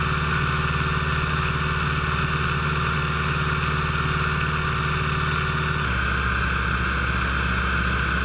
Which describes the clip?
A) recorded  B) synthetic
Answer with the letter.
A